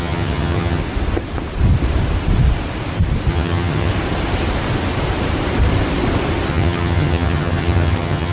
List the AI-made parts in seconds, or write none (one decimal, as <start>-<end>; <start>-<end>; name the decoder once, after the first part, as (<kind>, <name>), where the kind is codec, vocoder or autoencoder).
0.0-0.8 (vocoder, HiFi-GAN); 3.3-3.9; 6.5-8.3